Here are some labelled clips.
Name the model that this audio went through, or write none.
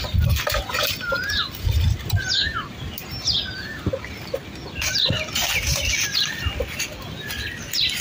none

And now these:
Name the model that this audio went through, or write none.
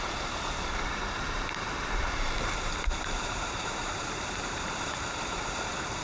vocoder, BigVGAN v2